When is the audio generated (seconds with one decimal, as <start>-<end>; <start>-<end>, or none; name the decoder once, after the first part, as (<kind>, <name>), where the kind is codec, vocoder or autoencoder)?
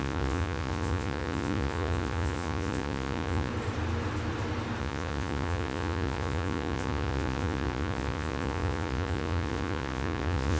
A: 0.0-3.5 (vocoder, Vocos); 4.8-10.6